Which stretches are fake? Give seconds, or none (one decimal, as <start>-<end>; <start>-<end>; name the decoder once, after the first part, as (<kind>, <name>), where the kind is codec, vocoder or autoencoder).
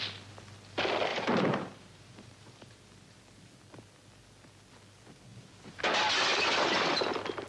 1.1-3.2 (vocoder, BigVGAN v2); 5.3-5.8; 6.3-7.1